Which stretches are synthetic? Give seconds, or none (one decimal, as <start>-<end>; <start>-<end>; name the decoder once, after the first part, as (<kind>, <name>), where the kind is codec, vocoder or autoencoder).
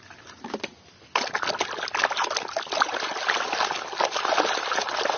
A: none